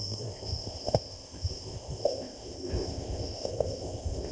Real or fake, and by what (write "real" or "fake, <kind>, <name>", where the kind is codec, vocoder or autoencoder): fake, codec, ZipCodec